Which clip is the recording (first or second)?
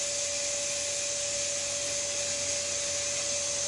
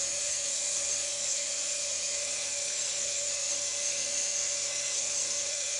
first